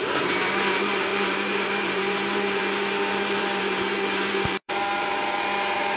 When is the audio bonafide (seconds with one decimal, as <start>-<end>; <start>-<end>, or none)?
0.0-1.1; 4.7-6.0